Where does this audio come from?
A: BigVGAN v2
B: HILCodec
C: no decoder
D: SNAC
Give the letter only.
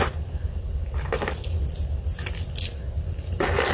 C